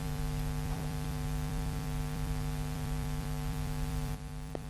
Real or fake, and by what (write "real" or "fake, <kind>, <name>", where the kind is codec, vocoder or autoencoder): fake, vocoder, BigVGAN v2